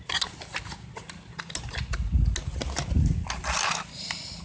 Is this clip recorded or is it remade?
recorded